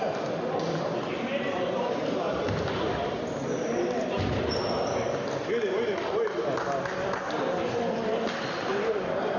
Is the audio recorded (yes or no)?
yes